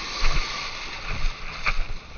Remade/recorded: recorded